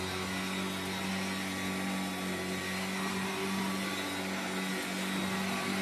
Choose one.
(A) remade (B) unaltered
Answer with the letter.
B